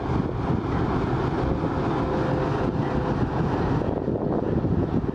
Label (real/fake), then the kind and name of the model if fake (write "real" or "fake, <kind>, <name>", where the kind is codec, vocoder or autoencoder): real